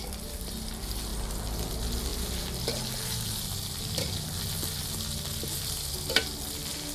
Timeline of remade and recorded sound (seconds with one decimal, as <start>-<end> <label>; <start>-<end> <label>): 0.0-6.9 recorded